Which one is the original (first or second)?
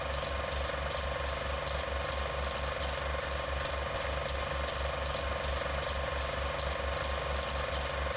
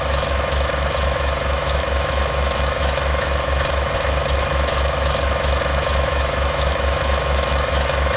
first